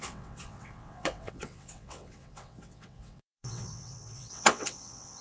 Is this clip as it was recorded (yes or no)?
no